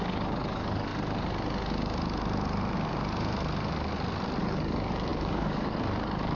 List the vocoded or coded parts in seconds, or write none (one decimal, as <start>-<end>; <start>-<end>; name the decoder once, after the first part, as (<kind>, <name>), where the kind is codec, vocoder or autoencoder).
0.0-0.9 (codec, DAC); 4.4-6.3